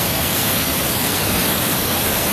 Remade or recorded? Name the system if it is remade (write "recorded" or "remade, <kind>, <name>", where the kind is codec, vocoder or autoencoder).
remade, codec, SNAC